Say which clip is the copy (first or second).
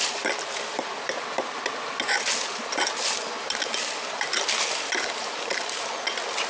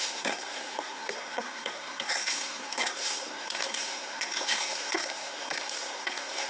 second